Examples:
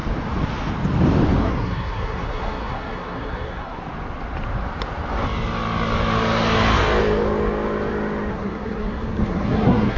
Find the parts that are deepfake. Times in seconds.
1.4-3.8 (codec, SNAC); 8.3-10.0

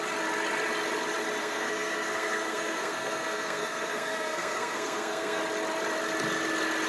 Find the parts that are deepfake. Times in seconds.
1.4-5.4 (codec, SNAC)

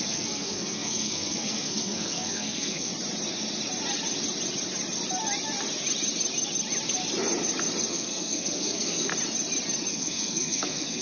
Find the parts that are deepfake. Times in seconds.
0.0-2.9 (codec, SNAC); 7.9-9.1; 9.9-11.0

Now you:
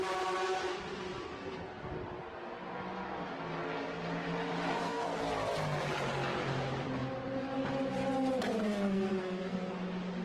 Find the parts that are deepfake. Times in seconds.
1.3-1.9 (codec, SNAC); 4.7-5.2; 8.5-9.7

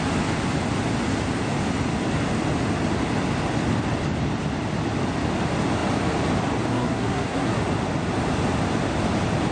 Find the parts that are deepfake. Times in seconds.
6.7-7.6 (codec, SNAC)

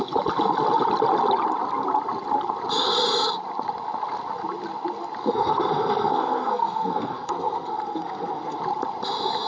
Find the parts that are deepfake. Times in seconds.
5.2-8.6 (codec, SNAC)